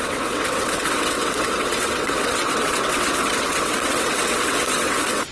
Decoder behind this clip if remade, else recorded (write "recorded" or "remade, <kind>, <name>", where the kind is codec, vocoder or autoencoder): remade, vocoder, WaveNeXt